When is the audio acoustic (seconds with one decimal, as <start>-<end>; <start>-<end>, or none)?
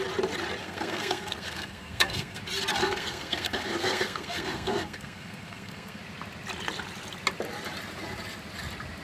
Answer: 0.0-0.6; 2.4-2.8; 6.0-9.0